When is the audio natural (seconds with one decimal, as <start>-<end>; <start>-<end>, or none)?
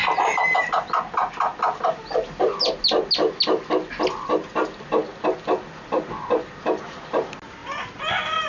0.0-8.5